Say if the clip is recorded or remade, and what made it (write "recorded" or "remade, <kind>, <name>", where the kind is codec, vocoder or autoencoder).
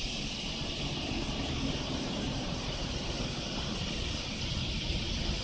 recorded